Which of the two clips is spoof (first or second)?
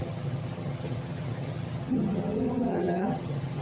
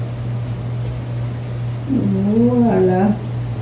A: first